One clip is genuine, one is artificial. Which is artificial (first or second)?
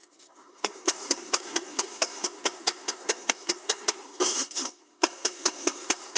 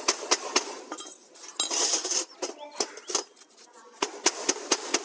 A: first